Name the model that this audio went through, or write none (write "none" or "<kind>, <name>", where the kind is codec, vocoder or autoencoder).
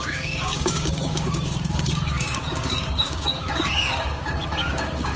codec, DAC